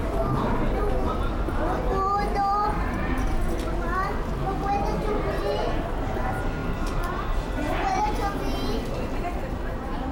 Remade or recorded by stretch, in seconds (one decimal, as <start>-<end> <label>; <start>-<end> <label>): 0.0-10.1 recorded